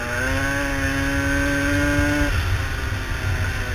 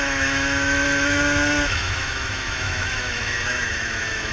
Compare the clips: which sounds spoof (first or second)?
second